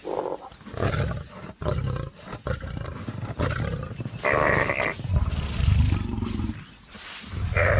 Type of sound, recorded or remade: recorded